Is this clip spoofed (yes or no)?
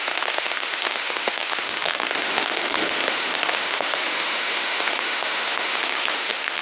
yes